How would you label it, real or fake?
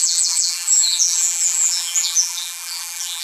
fake